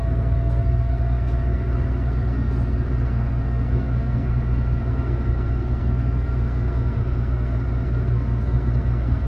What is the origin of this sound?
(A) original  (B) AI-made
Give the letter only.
B